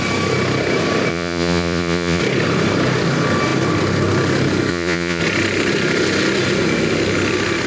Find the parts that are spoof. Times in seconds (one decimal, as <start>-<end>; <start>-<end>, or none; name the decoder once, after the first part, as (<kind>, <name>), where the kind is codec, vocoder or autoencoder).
1.1-2.2 (vocoder, Vocos); 4.7-5.2